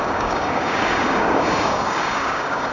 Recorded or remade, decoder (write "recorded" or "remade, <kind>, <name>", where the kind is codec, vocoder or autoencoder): remade, codec, DAC